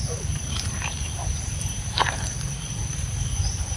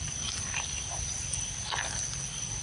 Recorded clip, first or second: second